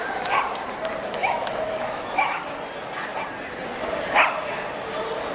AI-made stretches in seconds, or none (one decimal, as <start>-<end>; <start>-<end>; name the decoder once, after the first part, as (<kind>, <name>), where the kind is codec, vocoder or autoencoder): 1.2-2.4 (autoencoder, DAC-VAE)